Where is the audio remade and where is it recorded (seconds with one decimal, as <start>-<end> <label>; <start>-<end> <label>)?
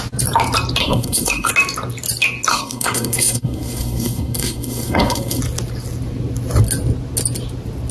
0.0-0.8 recorded; 0.8-1.5 remade; 1.5-2.5 recorded; 2.5-5.4 remade; 5.4-7.9 recorded